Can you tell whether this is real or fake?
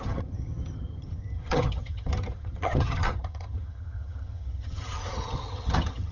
fake